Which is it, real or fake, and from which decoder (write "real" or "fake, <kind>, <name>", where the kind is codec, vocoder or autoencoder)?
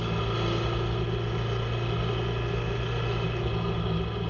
real